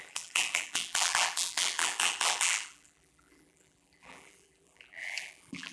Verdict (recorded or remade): remade